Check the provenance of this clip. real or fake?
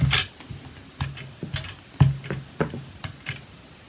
real